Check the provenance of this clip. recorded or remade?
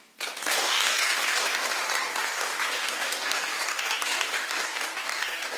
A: remade